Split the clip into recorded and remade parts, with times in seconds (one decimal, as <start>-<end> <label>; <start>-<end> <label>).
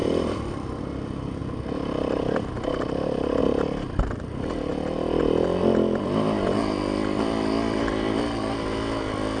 0.0-0.8 remade; 0.8-9.4 recorded